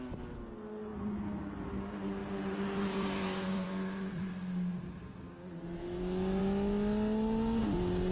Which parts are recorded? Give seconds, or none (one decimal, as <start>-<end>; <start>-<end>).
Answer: 0.0-2.2; 4.3-8.1